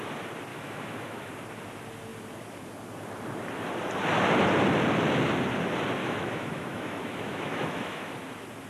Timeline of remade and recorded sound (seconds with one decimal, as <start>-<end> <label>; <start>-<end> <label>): 0.0-0.5 recorded; 0.5-1.3 remade; 1.3-6.0 recorded; 6.0-8.1 remade; 8.1-8.7 recorded